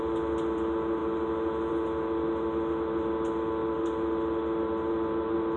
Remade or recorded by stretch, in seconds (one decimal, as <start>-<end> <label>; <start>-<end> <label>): 0.0-5.6 recorded